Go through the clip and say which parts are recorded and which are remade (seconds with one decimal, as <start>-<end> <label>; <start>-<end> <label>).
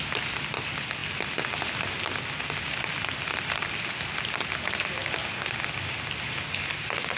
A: 0.0-7.2 recorded